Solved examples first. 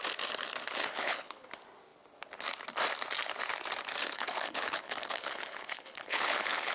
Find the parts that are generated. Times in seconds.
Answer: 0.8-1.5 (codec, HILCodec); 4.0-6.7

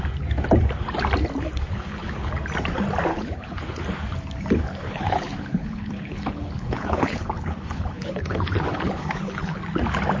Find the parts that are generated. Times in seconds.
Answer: 1.7-2.3 (codec, HILCodec); 3.1-3.8; 4.7-9.6

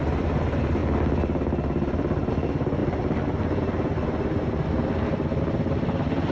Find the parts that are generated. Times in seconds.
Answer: none

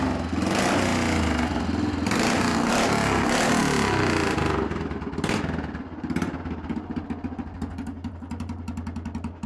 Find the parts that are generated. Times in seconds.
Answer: none